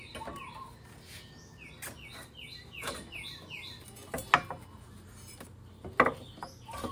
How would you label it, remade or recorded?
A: recorded